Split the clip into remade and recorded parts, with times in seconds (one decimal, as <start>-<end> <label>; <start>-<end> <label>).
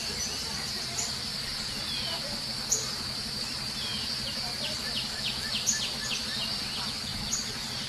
0.0-1.3 remade; 1.3-2.2 recorded; 2.2-7.9 remade